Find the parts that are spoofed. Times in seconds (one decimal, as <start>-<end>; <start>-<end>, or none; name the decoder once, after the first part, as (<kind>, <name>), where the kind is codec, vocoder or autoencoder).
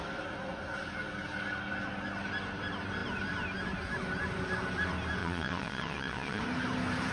5.2-6.4 (vocoder, WaveNeXt)